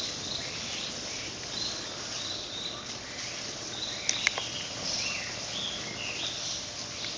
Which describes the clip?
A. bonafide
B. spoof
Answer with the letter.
A